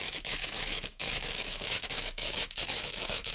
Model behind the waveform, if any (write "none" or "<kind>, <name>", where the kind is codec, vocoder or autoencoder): autoencoder, DAC-VAE